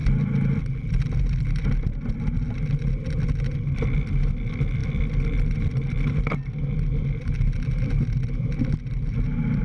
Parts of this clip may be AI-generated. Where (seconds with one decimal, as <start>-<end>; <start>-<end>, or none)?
none